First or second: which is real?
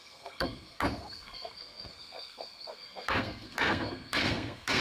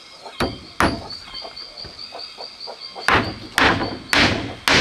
second